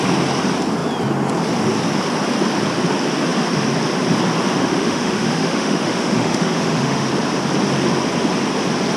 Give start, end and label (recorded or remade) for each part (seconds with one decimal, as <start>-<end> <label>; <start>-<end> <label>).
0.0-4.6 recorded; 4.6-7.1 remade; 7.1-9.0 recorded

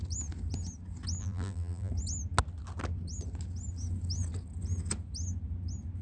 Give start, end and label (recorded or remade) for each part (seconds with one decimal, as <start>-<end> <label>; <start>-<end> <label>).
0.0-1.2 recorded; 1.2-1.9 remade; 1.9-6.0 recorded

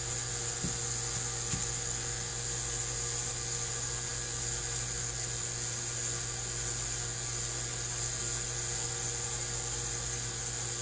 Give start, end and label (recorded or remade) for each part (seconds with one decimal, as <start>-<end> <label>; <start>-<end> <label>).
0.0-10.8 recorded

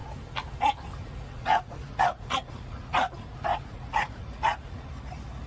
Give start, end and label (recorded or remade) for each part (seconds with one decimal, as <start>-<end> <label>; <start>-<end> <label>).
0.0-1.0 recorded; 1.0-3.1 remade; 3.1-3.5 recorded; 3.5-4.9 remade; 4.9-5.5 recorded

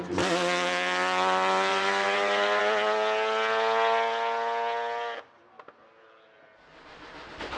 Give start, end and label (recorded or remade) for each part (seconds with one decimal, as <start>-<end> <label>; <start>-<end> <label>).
0.0-1.7 recorded; 1.7-2.6 remade; 2.6-6.7 recorded; 6.7-7.6 remade

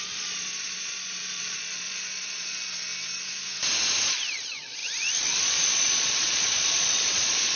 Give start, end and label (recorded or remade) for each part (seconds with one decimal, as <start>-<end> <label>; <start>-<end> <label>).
0.0-2.9 remade; 2.9-4.0 recorded; 4.0-7.6 remade

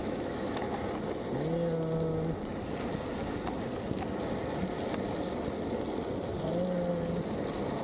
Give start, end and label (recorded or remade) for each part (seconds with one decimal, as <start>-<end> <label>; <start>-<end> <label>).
0.0-0.6 remade; 0.6-7.8 recorded

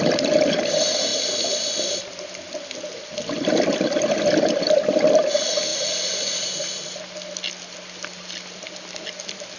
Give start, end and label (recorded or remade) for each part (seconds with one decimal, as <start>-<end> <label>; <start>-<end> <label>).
0.0-1.1 recorded; 1.1-2.0 remade; 2.0-9.6 recorded